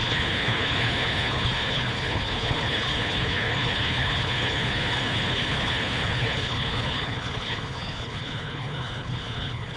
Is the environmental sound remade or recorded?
remade